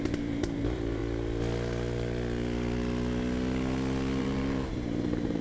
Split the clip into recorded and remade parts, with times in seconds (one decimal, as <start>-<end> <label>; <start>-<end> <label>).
0.0-1.0 remade; 1.0-4.2 recorded; 4.2-5.4 remade